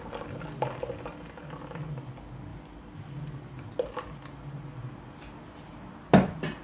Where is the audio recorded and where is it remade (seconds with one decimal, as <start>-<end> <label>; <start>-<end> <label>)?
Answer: 0.0-6.6 recorded